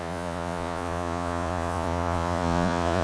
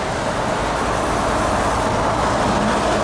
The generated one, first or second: first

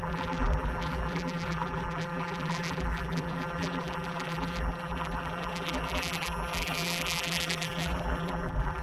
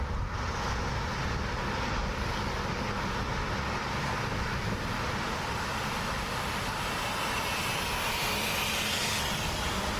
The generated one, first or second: first